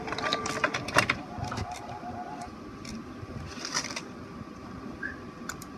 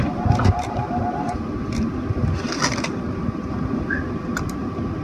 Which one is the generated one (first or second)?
first